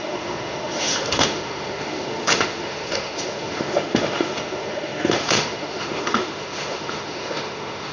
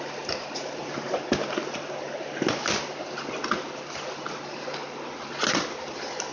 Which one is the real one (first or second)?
second